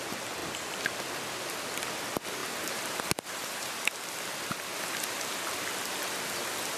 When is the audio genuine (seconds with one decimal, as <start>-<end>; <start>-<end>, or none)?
0.0-2.4; 4.0-6.8